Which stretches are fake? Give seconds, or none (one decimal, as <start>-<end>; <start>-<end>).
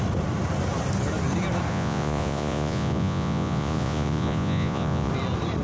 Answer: 1.7-5.1